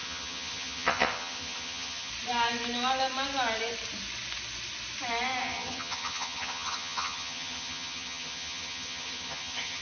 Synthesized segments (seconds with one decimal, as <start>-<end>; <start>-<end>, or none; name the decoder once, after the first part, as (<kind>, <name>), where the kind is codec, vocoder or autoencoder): 0.0-2.1 (vocoder, HiFi-GAN); 5.4-9.8

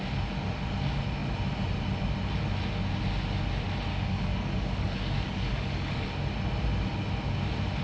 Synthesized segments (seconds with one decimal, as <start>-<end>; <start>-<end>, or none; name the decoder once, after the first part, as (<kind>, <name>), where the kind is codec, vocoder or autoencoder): 3.9-6.1 (codec, DAC)

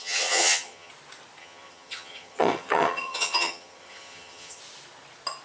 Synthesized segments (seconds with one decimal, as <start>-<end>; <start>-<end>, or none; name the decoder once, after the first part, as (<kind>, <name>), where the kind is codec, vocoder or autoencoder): 0.0-0.9 (vocoder, HiFi-GAN); 1.4-4.6